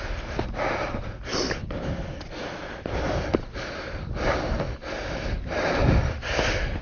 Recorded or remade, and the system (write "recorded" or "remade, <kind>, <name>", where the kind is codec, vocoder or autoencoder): recorded